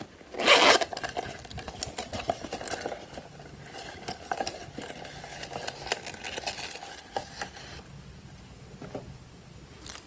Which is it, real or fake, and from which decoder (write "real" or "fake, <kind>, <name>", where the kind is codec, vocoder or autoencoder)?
real